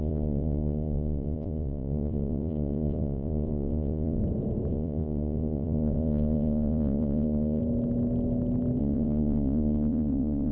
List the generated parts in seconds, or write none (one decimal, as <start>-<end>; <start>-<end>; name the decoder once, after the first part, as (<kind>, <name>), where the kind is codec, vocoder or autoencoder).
0.0-4.2 (vocoder, Vocos); 4.7-7.6; 8.8-10.5